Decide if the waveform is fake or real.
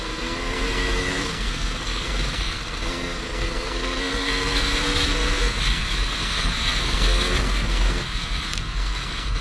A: fake